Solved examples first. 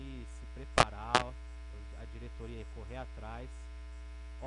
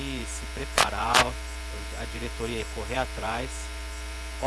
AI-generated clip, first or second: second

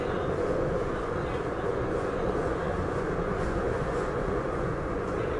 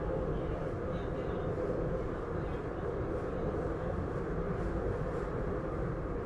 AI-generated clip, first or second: first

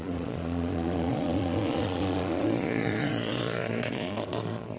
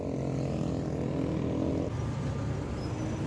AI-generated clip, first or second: first